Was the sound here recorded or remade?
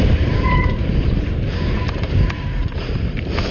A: remade